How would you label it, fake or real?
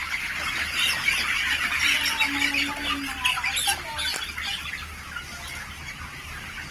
real